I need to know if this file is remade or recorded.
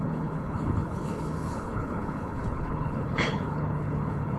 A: remade